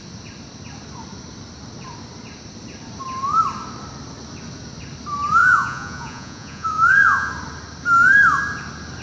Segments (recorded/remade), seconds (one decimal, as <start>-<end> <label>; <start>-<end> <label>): 0.0-5.4 recorded; 5.4-7.3 remade; 7.3-9.0 recorded